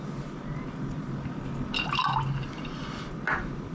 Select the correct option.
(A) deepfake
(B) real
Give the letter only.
B